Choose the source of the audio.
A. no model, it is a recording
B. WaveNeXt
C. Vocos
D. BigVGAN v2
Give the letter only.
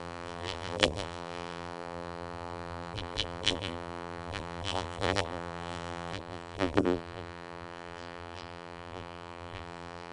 D